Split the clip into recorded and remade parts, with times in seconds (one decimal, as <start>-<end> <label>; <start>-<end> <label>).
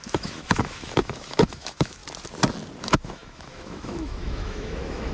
0.0-2.0 remade; 2.0-2.8 recorded; 2.8-5.1 remade